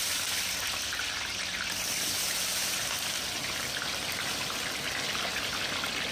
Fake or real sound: real